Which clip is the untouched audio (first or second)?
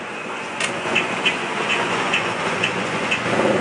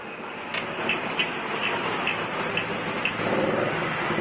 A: second